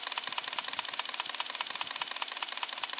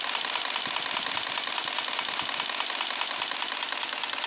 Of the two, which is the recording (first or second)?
second